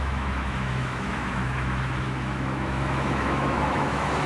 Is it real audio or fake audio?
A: fake